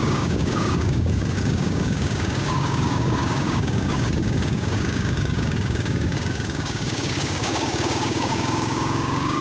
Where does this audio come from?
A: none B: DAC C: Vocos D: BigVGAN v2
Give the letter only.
B